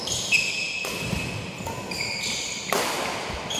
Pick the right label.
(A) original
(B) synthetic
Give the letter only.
A